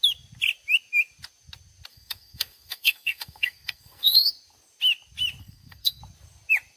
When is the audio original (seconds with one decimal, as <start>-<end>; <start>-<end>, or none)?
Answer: 0.0-1.9; 4.3-5.4; 6.0-6.8